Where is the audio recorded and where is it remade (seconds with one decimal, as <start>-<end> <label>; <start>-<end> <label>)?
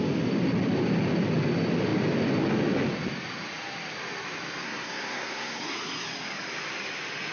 0.0-4.6 recorded; 4.6-5.6 remade; 5.6-7.3 recorded